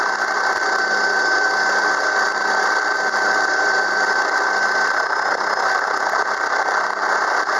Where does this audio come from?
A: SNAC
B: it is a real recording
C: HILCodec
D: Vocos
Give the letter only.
B